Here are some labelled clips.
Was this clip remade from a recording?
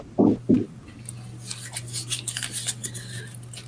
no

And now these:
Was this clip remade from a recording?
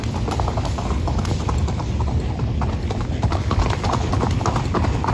no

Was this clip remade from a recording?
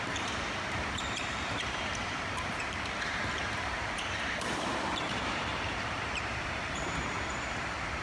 yes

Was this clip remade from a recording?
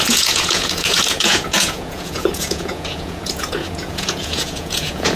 yes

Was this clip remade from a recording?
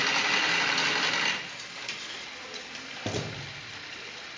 no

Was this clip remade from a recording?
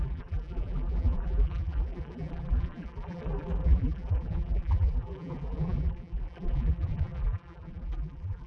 yes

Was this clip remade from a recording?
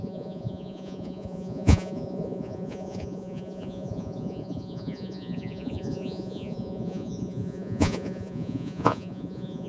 yes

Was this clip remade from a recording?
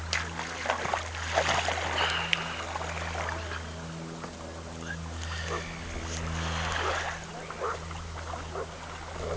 no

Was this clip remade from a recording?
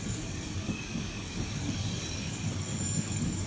yes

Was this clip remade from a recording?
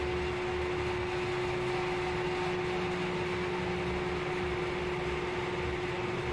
no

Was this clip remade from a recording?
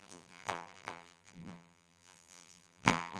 yes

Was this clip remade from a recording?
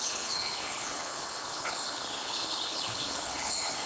yes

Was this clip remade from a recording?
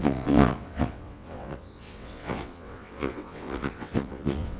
yes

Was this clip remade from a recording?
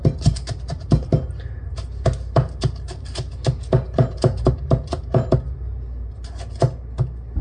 no